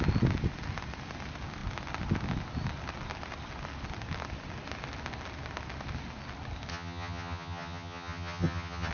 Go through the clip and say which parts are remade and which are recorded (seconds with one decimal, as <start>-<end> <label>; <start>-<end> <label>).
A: 0.0-6.7 recorded; 6.7-8.9 remade